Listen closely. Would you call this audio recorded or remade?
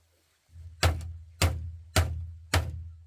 recorded